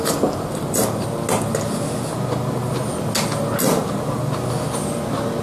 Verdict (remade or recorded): recorded